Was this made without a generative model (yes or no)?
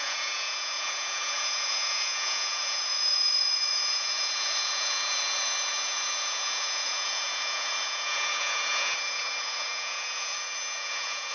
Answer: no